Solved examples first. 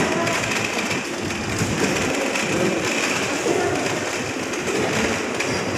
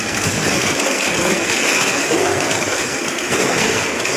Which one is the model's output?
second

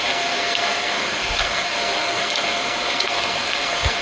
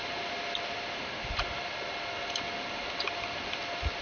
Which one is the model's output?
first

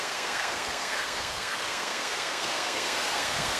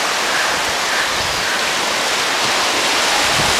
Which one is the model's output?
first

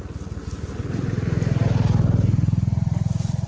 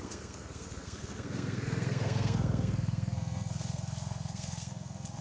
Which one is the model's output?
second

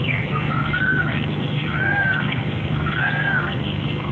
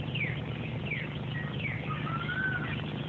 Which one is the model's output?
first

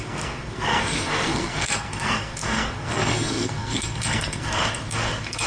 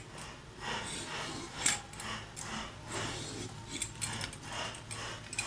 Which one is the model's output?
first